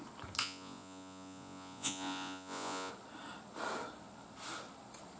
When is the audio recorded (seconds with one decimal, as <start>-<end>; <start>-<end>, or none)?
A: 0.0-0.4; 2.9-5.2